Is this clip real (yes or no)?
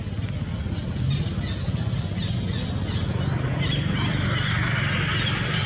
yes